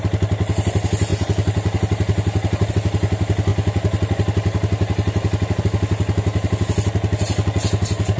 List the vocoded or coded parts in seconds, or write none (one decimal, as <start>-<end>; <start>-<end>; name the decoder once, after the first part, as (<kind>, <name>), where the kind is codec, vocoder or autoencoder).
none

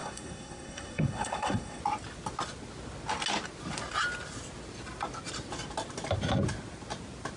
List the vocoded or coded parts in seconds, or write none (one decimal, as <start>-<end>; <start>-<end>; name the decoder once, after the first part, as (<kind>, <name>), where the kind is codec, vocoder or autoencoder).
0.0-1.8 (codec, SNAC)

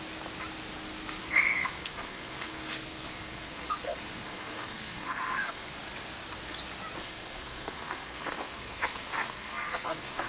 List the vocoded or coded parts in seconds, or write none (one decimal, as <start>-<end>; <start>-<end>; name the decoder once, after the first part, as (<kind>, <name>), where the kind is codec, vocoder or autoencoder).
1.2-5.7 (codec, SNAC); 7.0-10.3

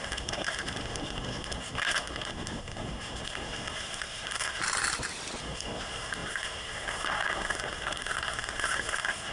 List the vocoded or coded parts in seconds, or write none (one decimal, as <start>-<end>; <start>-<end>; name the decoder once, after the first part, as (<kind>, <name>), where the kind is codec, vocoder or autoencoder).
0.0-4.6 (codec, SNAC); 5.4-9.3